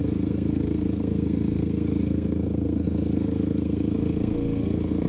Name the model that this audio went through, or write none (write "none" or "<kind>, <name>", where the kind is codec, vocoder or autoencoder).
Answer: codec, SNAC